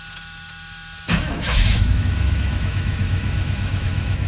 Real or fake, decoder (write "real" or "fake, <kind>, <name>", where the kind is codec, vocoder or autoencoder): fake, autoencoder, DAC-VAE